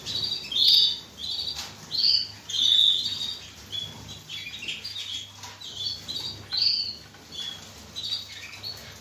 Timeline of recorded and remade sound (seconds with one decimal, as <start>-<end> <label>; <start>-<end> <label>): 0.0-9.0 recorded